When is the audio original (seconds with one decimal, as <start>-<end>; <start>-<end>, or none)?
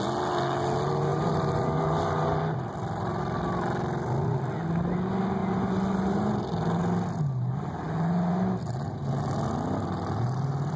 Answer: 0.0-1.1; 3.2-10.8